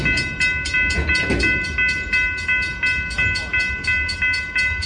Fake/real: real